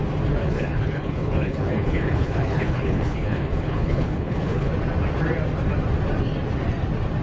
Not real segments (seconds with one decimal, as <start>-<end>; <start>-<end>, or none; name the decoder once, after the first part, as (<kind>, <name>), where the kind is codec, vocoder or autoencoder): 0.4-4.7 (codec, HILCodec)